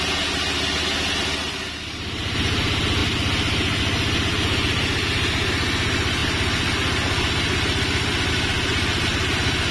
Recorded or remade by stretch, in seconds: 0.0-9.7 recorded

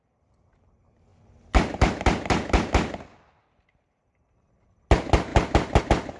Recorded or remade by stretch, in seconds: 0.0-6.2 recorded

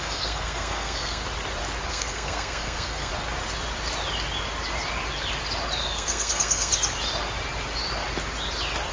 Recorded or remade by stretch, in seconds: 0.0-1.2 remade; 1.2-1.9 recorded; 1.9-3.1 remade; 3.1-5.8 recorded; 5.8-6.7 remade; 6.7-8.9 recorded

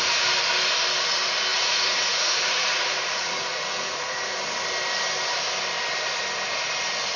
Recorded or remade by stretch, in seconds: 0.0-1.5 recorded; 1.5-4.2 remade; 4.2-7.2 recorded

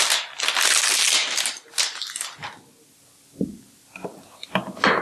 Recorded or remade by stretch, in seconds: 0.0-5.0 recorded

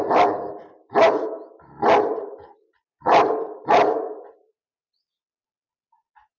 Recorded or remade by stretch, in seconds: 0.0-2.1 recorded; 2.1-5.9 remade; 5.9-6.4 recorded

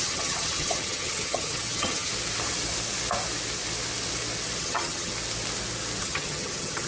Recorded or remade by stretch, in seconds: 0.0-2.1 remade; 2.1-4.6 recorded; 4.6-5.1 remade; 5.1-6.0 recorded; 6.0-6.9 remade